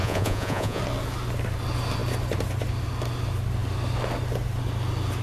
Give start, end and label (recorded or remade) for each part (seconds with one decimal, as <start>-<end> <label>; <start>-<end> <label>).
0.0-0.8 remade; 0.8-5.2 recorded